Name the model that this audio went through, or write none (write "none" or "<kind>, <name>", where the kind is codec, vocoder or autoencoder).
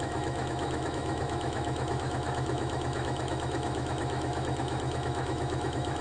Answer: autoencoder, DAC-VAE